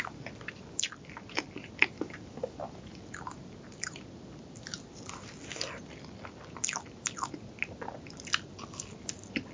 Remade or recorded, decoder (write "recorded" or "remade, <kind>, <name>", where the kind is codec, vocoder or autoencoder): recorded